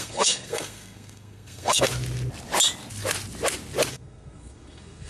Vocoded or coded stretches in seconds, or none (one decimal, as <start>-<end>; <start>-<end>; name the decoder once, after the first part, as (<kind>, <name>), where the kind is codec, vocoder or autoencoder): 0.0-1.9 (codec, SNAC); 3.9-5.1